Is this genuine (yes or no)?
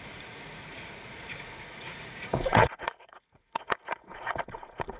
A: no